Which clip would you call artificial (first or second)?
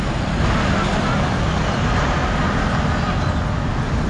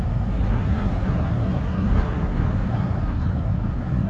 second